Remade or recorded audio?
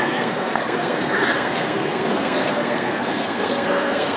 remade